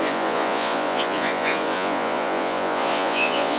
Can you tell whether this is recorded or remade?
remade